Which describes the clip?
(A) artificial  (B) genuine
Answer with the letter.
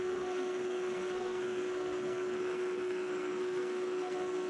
A